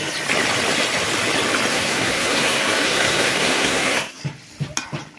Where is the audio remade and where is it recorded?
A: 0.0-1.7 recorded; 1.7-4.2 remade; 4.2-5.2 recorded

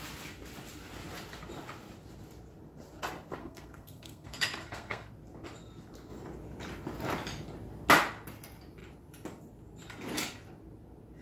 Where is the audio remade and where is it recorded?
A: 0.0-3.4 recorded; 3.4-5.1 remade; 5.1-11.2 recorded

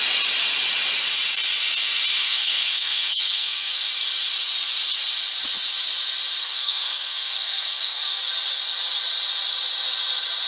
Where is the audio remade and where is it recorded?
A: 0.0-2.2 recorded; 2.2-3.9 remade; 3.9-6.4 recorded; 6.4-8.2 remade; 8.2-10.5 recorded

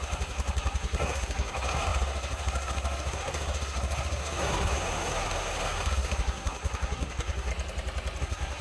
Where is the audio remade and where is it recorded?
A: 0.0-7.5 remade; 7.5-8.2 recorded; 8.2-8.6 remade

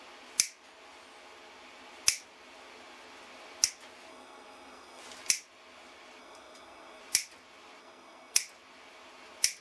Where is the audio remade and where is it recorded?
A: 0.0-4.1 recorded; 4.1-5.0 remade; 5.0-6.2 recorded; 6.2-7.0 remade; 7.0-7.8 recorded; 7.8-8.4 remade; 8.4-9.6 recorded

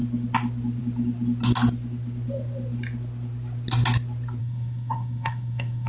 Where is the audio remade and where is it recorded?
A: 0.0-4.4 recorded; 4.4-5.9 remade

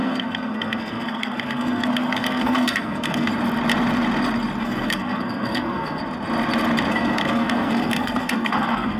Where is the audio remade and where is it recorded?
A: 0.0-3.3 remade; 3.3-4.6 recorded; 4.6-6.0 remade; 6.0-6.9 recorded; 6.9-9.0 remade

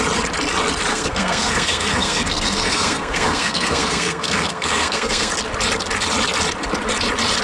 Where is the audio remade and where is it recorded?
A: 0.0-0.9 recorded; 0.9-5.3 remade; 5.3-7.4 recorded